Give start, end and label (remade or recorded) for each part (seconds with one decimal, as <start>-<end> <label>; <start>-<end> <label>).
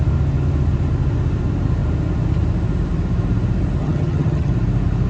0.0-3.8 recorded; 3.8-4.5 remade; 4.5-5.1 recorded